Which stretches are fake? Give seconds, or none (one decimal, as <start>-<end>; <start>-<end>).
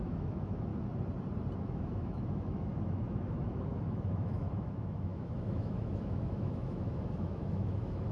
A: 0.0-0.7; 1.6-8.1